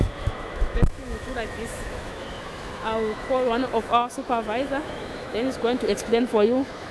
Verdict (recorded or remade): remade